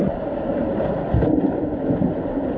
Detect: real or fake real